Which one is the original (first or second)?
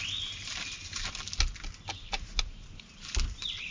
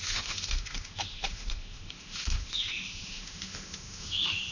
first